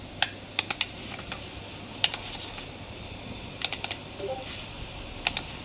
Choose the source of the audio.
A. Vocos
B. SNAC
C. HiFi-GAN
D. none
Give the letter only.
D